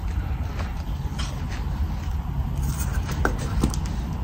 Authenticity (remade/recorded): recorded